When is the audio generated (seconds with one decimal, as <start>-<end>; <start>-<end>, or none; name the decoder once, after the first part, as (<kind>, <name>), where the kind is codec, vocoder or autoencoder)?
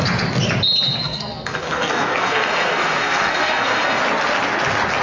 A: 1.0-4.0 (codec, SNAC)